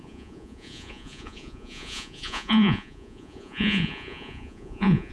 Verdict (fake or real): fake